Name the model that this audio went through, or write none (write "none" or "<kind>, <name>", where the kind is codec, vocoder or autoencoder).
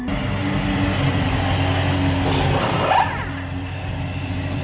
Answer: none